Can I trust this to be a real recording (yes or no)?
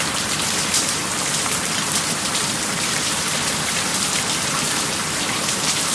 no